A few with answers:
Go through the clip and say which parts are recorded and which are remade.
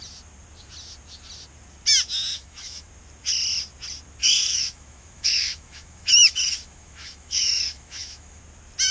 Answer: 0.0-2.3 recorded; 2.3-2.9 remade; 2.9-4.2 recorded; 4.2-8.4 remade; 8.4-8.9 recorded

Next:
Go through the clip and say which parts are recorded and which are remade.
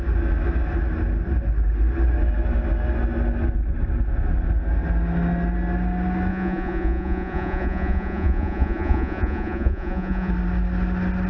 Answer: 0.0-6.3 recorded; 6.3-10.3 remade; 10.3-11.3 recorded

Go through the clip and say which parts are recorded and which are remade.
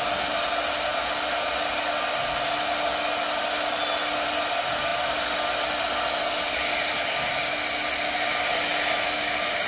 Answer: 0.0-9.7 recorded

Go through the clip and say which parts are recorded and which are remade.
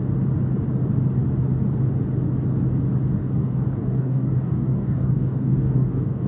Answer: 0.0-3.2 recorded; 3.2-6.3 remade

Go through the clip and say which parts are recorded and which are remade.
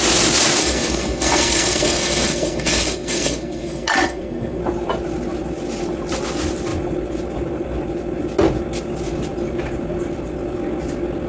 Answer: 0.0-0.6 recorded; 0.6-4.6 remade; 4.6-11.3 recorded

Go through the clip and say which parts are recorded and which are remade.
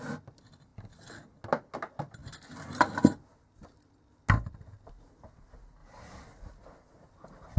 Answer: 0.0-7.6 recorded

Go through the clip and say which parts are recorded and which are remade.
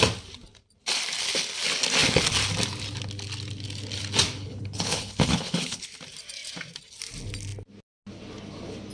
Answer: 0.0-4.4 recorded; 4.4-6.0 remade; 6.0-8.9 recorded